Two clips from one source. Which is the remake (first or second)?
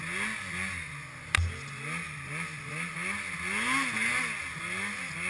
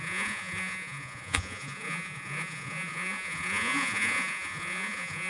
second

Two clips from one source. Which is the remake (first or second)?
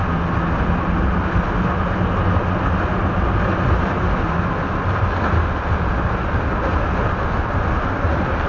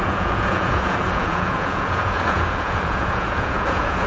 second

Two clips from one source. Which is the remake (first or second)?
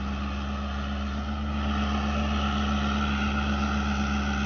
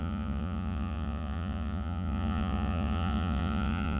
second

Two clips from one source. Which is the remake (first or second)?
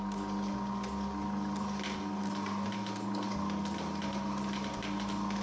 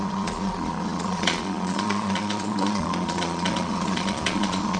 second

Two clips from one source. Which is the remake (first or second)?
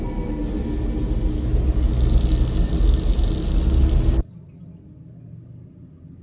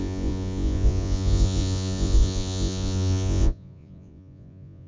second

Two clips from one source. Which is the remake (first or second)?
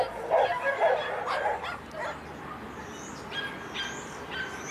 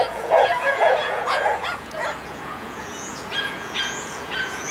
second